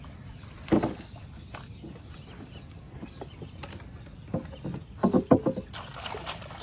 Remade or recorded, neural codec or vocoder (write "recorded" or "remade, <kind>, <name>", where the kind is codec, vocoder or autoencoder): recorded